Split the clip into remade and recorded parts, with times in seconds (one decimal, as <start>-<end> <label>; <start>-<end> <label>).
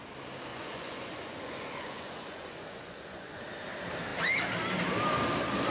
0.0-0.5 recorded; 0.5-3.4 remade; 3.4-5.7 recorded